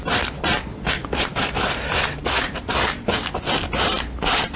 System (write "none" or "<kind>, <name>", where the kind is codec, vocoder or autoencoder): none